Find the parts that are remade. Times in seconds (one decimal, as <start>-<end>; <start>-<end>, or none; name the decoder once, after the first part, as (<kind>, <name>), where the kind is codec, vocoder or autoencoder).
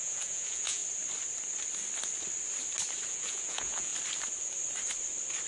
0.0-0.8 (vocoder, Vocos); 3.1-3.9